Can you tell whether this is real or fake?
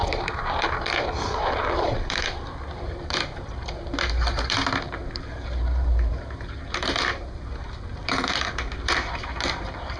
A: fake